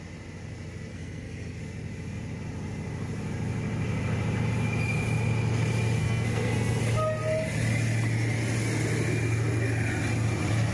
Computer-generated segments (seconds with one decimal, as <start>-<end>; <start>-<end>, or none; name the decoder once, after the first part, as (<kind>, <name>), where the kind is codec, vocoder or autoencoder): 0.9-1.6 (codec, SNAC); 6.0-6.8